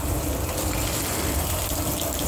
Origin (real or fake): real